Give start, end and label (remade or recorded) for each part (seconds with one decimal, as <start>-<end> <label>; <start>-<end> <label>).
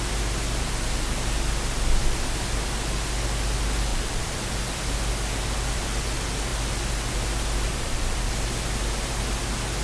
0.0-3.9 recorded; 3.9-4.5 remade; 4.5-7.7 recorded; 7.7-8.3 remade; 8.3-9.8 recorded